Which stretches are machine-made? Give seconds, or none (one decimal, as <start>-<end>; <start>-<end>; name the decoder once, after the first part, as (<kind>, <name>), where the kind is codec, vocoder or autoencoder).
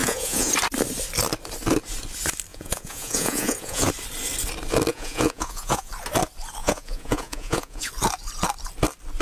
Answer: 0.0-0.5 (vocoder, Vocos); 2.5-3.9; 4.9-5.9; 6.6-7.9